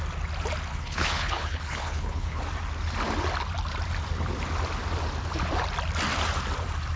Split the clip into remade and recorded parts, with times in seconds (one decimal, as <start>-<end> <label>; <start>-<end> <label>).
0.0-0.7 recorded; 0.7-2.4 remade; 2.4-7.0 recorded

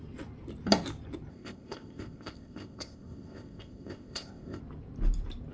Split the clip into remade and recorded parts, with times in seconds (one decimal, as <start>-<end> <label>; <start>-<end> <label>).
0.0-1.3 recorded; 1.3-4.6 remade; 4.6-5.5 recorded

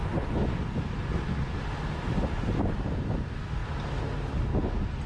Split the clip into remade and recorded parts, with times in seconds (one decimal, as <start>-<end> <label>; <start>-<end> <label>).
0.0-5.1 recorded

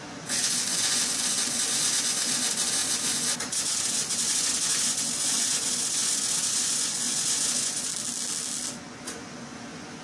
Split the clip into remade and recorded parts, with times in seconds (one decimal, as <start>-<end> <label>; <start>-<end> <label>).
0.0-7.9 remade; 7.9-8.7 recorded; 8.7-10.0 remade

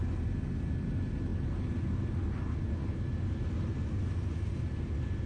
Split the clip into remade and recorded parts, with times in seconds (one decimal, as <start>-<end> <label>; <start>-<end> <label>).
0.0-5.3 recorded

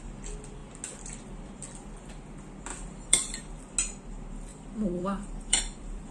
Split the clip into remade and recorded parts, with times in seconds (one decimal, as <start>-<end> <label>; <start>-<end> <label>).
0.0-2.7 recorded; 2.7-3.4 remade; 3.4-4.5 recorded; 4.5-6.1 remade